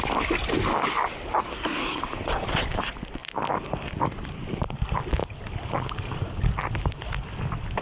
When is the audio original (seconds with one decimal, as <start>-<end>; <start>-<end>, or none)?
0.0-1.4; 2.0-7.8